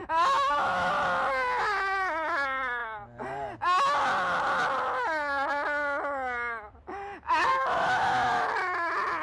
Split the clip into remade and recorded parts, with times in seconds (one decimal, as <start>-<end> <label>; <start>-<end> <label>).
0.0-0.9 remade; 0.9-7.5 recorded; 7.5-8.5 remade; 8.5-9.2 recorded